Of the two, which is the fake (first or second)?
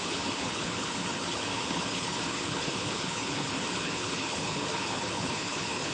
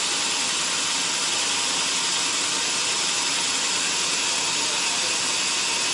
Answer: first